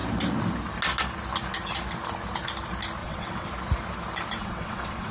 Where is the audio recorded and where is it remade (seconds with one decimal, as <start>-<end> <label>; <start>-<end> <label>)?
0.0-3.0 recorded; 3.0-3.5 remade; 3.5-4.4 recorded; 4.4-5.1 remade